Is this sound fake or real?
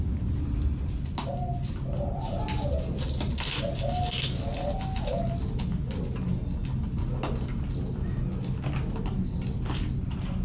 real